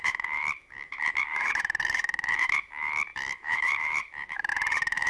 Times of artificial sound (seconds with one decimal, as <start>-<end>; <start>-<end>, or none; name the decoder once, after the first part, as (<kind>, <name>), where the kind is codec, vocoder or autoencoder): 0.0-5.1 (autoencoder, DAC-VAE)